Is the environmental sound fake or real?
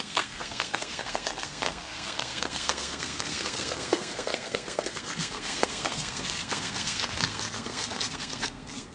fake